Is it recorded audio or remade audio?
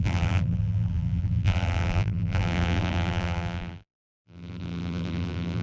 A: remade